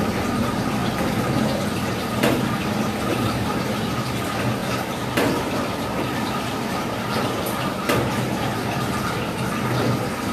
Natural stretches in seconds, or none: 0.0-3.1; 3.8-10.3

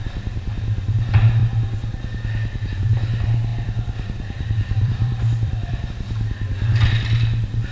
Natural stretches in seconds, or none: 0.0-3.5; 5.9-7.7

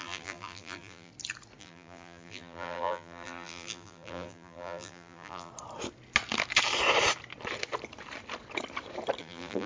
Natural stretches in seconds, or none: 1.1-1.6; 5.5-9.2

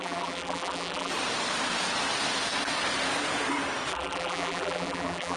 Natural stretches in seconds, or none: 1.1-3.9